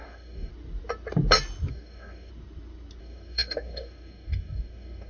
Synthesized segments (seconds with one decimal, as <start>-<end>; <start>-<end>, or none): 0.0-0.5; 1.7-2.3; 3.0-5.1